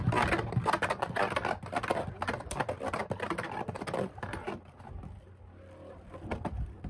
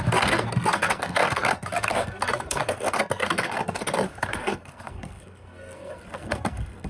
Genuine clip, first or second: first